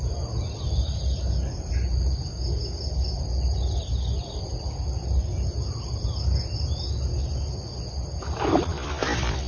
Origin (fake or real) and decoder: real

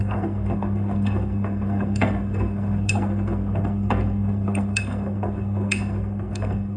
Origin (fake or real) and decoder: fake, codec, SNAC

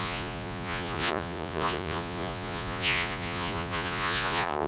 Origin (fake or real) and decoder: fake, vocoder, Vocos